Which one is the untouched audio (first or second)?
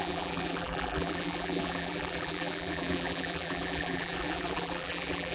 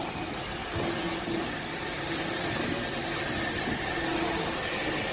second